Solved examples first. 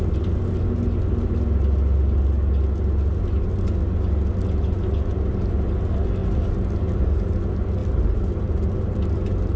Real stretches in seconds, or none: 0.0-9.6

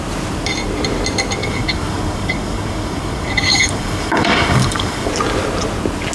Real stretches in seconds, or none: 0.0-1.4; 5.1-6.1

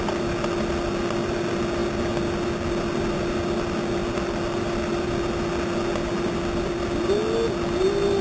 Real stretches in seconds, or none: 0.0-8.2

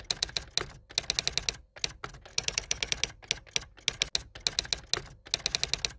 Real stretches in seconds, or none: 0.0-2.3; 2.9-6.0

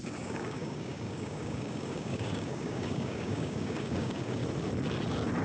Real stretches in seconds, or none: 4.4-5.4

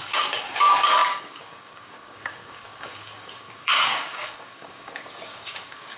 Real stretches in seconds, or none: none

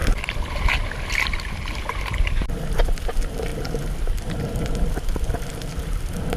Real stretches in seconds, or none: 0.0-6.4